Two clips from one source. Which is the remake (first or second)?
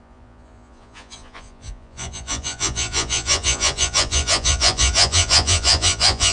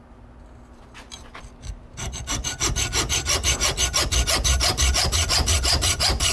first